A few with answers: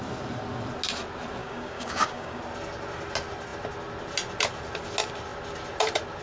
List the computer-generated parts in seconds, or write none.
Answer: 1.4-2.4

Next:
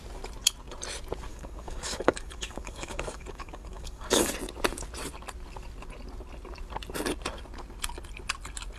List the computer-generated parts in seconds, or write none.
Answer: 1.3-4.3

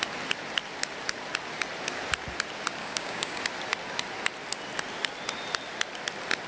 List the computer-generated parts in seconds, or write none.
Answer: 2.8-3.4

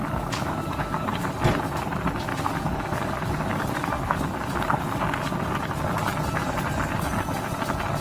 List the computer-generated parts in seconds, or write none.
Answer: 0.0-1.3; 2.3-4.1

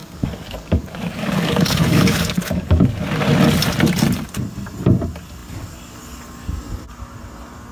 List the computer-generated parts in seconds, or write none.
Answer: 0.0-3.1

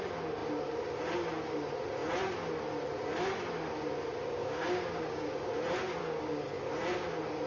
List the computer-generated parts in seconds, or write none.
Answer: 4.4-5.5; 6.0-6.7

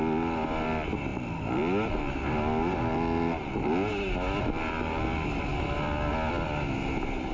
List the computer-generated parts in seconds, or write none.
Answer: none